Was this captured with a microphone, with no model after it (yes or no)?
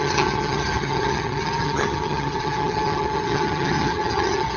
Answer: no